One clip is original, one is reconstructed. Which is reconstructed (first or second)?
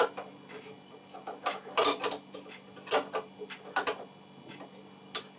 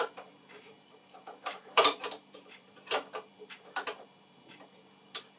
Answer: second